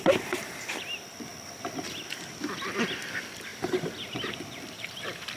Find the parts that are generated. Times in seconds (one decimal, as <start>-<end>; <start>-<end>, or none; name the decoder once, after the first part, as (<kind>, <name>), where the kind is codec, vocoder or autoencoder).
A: 0.0-1.3 (vocoder, BigVGAN v2); 2.8-5.4